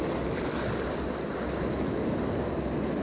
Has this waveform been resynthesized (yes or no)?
no